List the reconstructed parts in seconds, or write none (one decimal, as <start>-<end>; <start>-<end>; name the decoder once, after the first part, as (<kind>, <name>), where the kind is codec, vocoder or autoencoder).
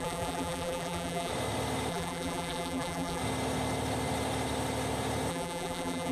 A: 0.0-1.3 (vocoder, BigVGAN v2); 1.9-3.2; 5.3-6.1